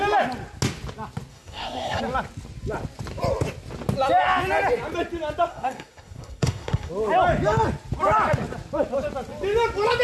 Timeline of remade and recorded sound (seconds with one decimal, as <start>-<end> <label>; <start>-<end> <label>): 0.0-1.3 recorded; 1.3-2.0 remade; 2.0-5.5 recorded; 5.5-6.9 remade; 6.9-10.0 recorded